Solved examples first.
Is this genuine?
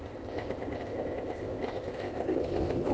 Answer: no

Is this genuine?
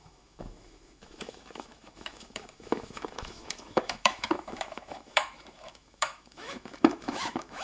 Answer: no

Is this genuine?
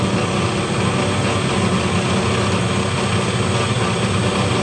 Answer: yes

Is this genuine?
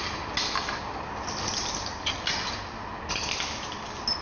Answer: yes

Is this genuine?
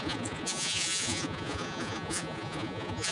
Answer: no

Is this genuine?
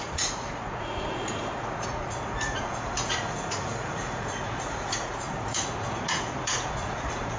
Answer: no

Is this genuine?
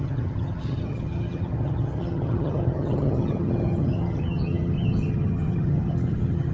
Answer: no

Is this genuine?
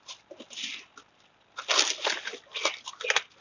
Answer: yes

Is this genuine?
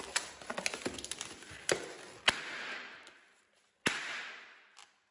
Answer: yes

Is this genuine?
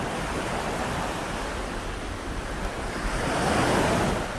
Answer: yes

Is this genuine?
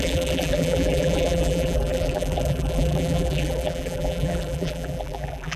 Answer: no